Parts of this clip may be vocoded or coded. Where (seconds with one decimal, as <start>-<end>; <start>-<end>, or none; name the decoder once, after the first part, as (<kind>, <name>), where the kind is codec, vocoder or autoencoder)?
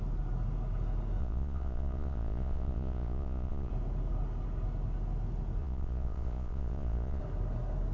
1.2-3.7 (vocoder, Vocos); 5.6-7.2